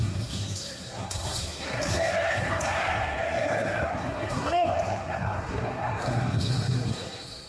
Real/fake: fake